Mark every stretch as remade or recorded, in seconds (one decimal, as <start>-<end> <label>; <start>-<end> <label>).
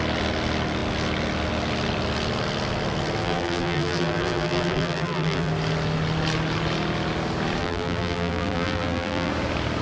0.0-3.2 recorded; 3.2-5.5 remade; 5.5-7.6 recorded; 7.6-9.3 remade; 9.3-9.8 recorded